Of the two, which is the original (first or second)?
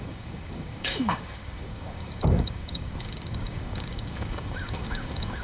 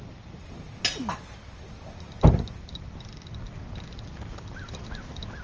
second